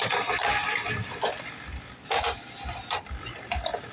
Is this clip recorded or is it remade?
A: remade